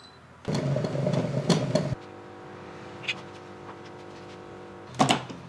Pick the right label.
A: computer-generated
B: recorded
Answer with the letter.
B